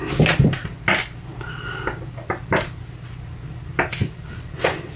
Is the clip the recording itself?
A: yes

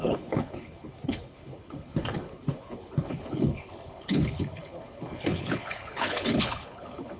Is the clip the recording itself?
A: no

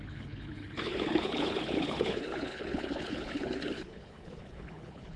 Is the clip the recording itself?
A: no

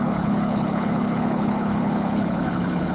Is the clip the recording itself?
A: no